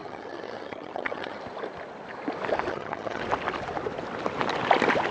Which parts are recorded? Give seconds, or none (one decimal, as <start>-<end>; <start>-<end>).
1.4-2.7; 3.2-5.1